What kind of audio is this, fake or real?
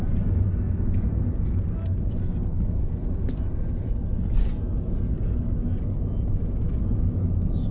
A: real